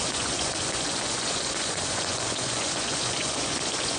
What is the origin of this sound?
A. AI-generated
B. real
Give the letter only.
A